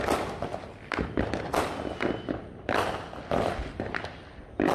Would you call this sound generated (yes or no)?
no